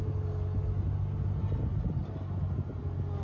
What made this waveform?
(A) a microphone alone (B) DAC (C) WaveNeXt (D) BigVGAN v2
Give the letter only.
A